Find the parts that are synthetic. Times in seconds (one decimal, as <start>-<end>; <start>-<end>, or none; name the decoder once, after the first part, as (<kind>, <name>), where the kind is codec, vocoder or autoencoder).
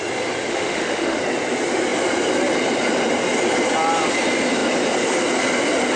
0.5-1.2 (autoencoder, DAC-VAE)